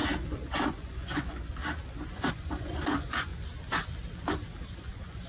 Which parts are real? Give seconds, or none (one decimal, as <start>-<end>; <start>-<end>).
0.0-0.7; 1.6-2.3; 3.3-4.7

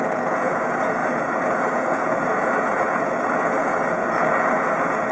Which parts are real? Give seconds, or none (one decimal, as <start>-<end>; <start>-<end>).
none

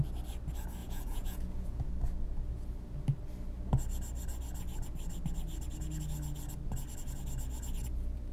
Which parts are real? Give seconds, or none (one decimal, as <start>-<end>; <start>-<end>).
0.0-0.8; 1.9-8.3

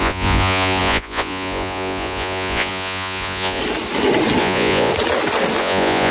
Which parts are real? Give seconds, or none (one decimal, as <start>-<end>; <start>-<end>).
3.6-4.4; 4.9-5.6